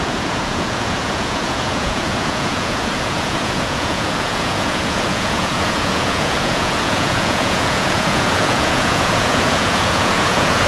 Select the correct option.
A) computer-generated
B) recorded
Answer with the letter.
A